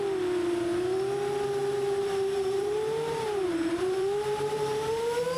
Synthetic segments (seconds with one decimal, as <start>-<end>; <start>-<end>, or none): 1.6-4.6